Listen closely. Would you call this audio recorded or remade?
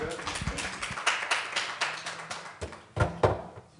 recorded